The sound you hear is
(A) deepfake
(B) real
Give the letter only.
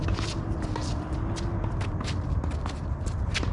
A